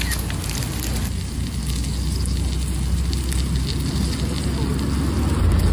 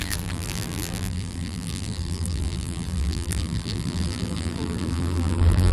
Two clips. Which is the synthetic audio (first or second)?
second